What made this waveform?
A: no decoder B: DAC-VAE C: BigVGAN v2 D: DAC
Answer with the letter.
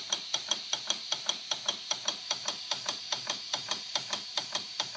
C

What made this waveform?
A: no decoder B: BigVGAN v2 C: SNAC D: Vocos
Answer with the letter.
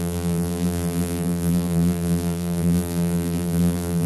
B